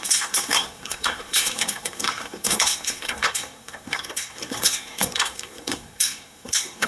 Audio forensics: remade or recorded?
remade